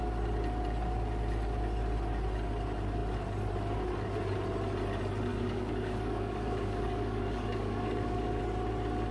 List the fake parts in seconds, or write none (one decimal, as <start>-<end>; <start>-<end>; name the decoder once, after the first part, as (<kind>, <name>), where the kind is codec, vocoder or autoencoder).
5.3-8.4 (codec, DAC)